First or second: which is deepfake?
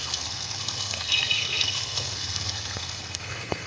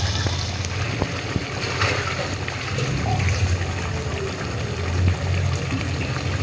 first